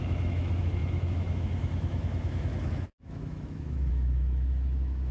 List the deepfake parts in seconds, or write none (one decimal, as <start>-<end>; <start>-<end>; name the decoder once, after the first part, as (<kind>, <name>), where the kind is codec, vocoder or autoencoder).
0.0-5.1 (autoencoder, DAC-VAE)